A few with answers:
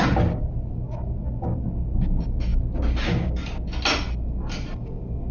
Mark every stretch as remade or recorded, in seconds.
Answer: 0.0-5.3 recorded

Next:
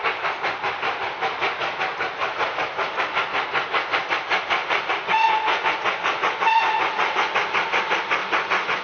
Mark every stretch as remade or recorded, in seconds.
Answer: 0.0-4.6 recorded; 4.6-7.3 remade; 7.3-8.2 recorded; 8.2-8.8 remade

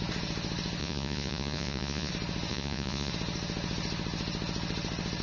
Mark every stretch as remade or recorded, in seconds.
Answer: 0.0-0.8 recorded; 0.8-2.1 remade; 2.1-2.5 recorded; 2.5-3.1 remade; 3.1-5.2 recorded

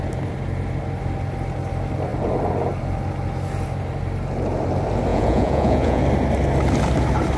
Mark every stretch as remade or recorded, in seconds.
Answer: 0.0-5.1 recorded; 5.1-6.0 remade; 6.0-7.4 recorded

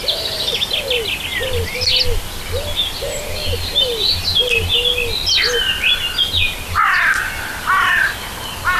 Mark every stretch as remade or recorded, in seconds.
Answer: 0.0-8.8 recorded

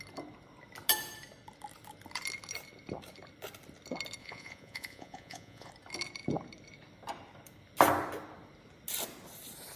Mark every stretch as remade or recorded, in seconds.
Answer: 0.0-4.2 recorded; 4.2-5.7 remade; 5.7-9.8 recorded